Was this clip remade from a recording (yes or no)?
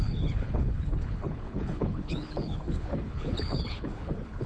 yes